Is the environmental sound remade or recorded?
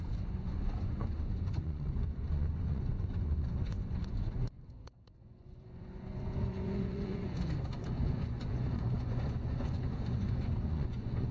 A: remade